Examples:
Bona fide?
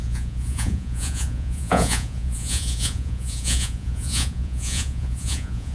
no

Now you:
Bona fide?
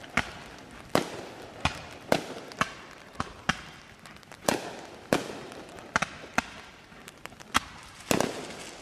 yes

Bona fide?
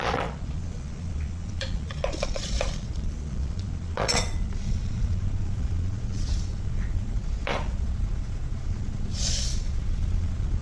no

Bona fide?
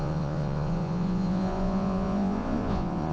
no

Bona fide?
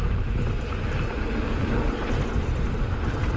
yes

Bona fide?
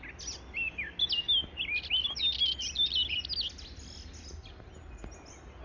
yes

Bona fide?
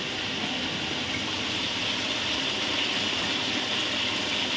yes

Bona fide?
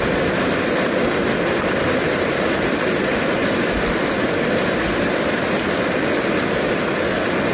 yes